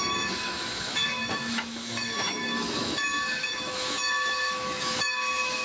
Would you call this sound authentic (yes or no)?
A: no